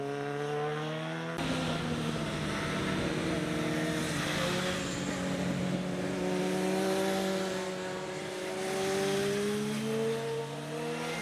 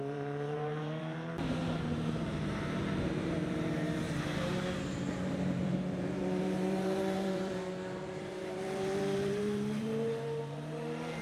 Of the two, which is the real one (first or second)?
first